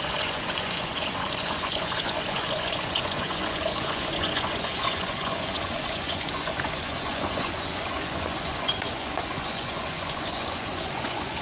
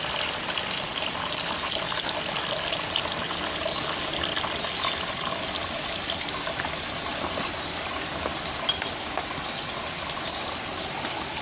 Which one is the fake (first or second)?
first